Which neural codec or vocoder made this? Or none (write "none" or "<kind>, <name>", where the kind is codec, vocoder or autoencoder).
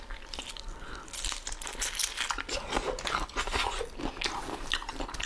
none